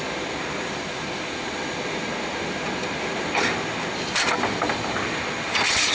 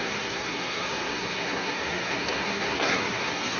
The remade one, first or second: second